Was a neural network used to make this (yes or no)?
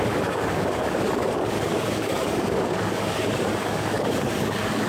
yes